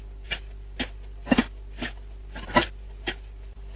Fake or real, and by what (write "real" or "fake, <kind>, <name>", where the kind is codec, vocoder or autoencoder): real